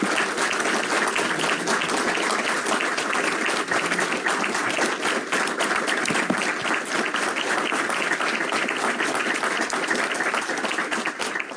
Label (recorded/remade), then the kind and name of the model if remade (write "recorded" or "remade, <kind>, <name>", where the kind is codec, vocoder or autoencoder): recorded